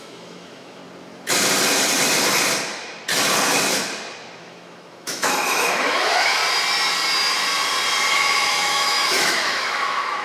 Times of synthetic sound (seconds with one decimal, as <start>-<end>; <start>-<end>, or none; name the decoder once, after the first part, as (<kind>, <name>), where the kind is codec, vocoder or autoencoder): 0.0-0.8 (autoencoder, DAC-VAE); 4.4-6.4; 8.1-10.2